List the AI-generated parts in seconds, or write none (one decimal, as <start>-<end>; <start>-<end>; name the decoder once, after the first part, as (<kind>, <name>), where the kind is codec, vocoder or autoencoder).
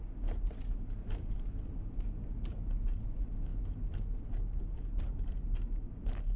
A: none